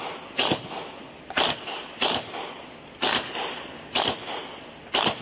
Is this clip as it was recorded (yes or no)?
yes